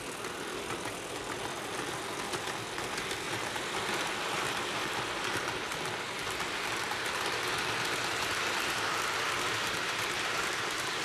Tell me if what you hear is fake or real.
real